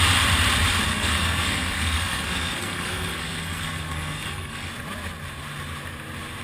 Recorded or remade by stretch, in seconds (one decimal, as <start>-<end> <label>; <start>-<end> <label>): 0.0-0.9 recorded; 0.9-4.7 remade; 4.7-6.4 recorded